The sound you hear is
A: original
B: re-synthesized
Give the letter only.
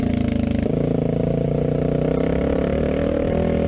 A